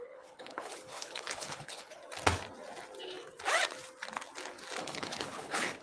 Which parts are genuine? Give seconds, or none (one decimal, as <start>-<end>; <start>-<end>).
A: 2.0-4.8